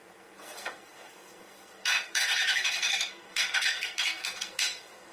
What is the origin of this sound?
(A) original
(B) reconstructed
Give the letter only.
B